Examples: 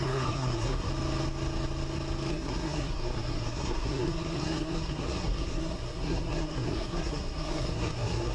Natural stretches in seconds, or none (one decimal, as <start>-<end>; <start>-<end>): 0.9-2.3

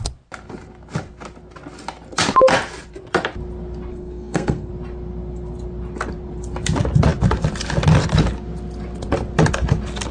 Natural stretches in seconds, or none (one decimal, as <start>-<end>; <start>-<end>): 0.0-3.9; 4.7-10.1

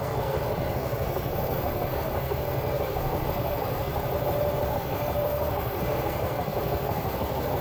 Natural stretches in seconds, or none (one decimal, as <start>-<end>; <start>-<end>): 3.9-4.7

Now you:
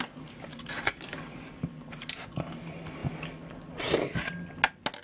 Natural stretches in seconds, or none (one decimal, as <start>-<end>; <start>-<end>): 0.0-5.0

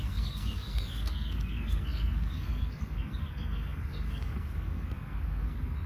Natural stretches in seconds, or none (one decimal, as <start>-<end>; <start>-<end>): none

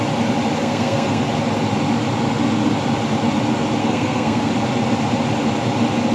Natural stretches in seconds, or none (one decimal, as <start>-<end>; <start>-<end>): 0.0-0.6; 1.2-3.8; 4.5-6.1